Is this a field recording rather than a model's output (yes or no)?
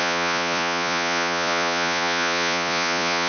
no